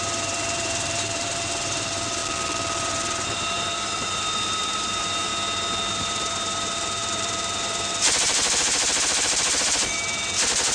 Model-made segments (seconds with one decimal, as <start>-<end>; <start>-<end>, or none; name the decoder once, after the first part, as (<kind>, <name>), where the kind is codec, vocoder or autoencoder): 0.0-2.2 (vocoder, BigVGAN v2); 2.8-5.3; 5.9-10.7